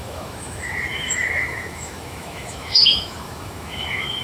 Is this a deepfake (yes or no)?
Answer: yes